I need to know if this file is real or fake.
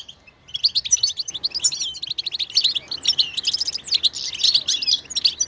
real